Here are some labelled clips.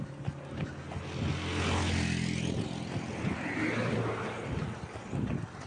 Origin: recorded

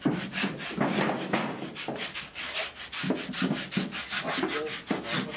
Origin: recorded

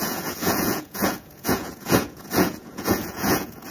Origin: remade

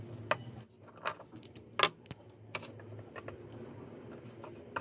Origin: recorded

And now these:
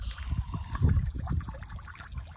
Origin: recorded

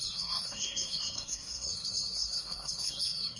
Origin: remade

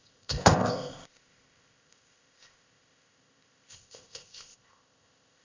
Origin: remade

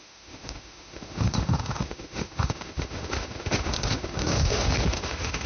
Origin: remade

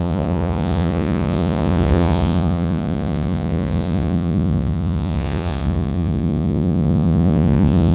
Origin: remade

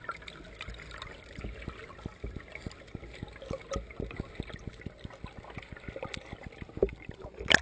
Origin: recorded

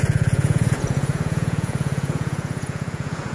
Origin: remade